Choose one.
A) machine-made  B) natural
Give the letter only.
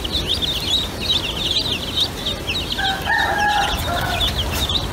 B